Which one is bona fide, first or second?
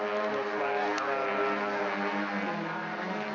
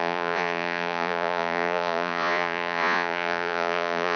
first